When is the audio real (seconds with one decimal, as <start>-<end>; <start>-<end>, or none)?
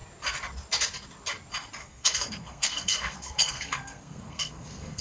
0.0-1.8